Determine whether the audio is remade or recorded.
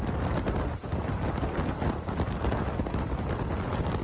recorded